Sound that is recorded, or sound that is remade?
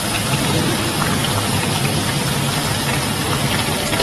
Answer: recorded